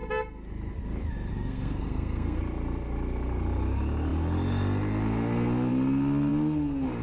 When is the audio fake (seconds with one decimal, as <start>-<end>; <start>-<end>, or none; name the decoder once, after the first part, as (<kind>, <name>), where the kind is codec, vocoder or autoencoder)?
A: 1.3-2.4 (codec, SNAC)

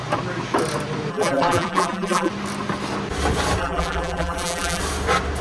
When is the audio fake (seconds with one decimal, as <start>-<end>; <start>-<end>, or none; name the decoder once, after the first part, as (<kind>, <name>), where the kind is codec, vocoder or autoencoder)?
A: 1.1-2.3 (vocoder, BigVGAN v2); 3.6-4.8